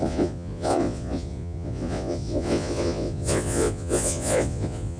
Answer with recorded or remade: remade